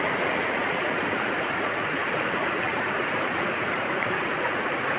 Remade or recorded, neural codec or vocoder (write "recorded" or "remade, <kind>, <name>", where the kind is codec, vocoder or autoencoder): remade, vocoder, Vocos